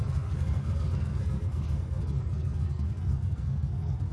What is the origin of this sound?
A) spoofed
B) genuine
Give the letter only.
A